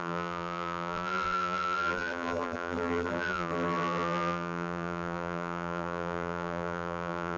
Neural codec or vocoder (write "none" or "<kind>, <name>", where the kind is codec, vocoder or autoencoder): vocoder, BigVGAN v2